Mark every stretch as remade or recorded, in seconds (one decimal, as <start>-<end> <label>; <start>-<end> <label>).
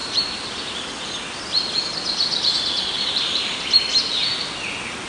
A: 0.0-1.1 remade; 1.1-2.9 recorded; 2.9-3.8 remade; 3.8-5.1 recorded